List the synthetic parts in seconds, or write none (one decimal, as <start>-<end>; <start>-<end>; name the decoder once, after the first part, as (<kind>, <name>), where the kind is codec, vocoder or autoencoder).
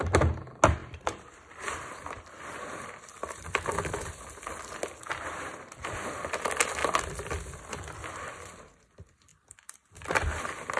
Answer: 0.8-4.6 (vocoder, BigVGAN v2); 6.8-7.7; 9.3-10.4